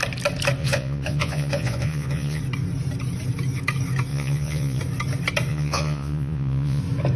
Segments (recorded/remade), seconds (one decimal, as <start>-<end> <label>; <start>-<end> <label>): 0.0-0.6 recorded; 0.6-2.4 remade; 2.4-4.1 recorded; 4.1-4.8 remade; 4.8-5.5 recorded; 5.5-6.8 remade; 6.8-7.2 recorded